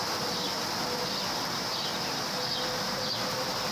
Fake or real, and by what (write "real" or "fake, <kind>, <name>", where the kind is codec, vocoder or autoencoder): real